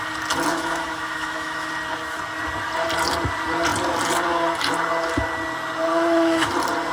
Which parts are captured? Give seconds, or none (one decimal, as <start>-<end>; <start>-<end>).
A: 0.0-0.5; 1.7-5.9; 6.5-6.9